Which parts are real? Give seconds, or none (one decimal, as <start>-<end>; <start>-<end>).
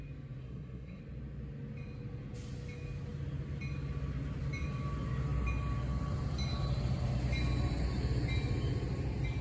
0.0-0.4; 1.0-9.4